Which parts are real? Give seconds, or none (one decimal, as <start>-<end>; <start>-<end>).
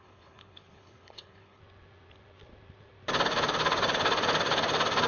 1.6-5.1